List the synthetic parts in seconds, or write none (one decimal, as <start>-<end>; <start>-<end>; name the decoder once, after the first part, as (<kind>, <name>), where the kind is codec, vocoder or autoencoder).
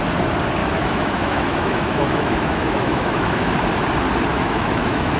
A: 0.6-3.5 (autoencoder, DAC-VAE); 4.3-5.2